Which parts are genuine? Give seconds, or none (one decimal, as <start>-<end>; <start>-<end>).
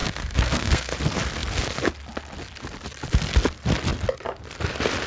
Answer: 0.9-5.1